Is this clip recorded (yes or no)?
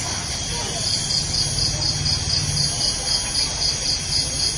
yes